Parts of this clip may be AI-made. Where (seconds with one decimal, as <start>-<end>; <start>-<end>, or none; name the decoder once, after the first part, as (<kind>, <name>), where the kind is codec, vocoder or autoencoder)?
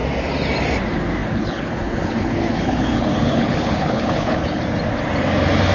1.2-4.6 (codec, HILCodec)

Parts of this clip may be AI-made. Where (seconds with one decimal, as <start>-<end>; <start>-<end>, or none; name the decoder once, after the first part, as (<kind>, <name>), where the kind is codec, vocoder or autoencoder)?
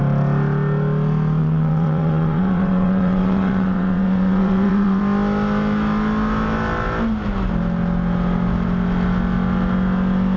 1.4-5.0 (vocoder, WaveNeXt)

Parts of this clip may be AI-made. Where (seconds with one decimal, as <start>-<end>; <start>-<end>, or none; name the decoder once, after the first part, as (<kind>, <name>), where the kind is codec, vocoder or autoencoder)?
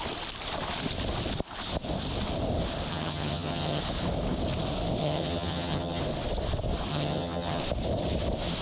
2.9-3.8 (vocoder, HiFi-GAN); 5.0-6.0; 6.9-7.6